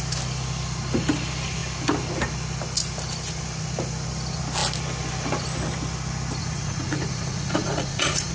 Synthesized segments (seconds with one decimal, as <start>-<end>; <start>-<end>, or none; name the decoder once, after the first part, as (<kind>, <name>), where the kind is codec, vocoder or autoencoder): 6.4-8.3 (vocoder, Vocos)